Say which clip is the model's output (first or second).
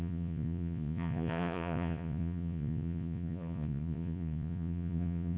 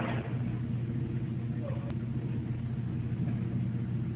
first